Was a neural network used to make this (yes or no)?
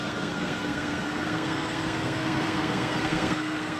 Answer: yes